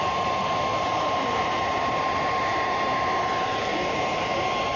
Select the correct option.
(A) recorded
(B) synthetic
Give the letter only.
B